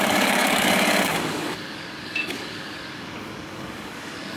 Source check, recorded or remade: remade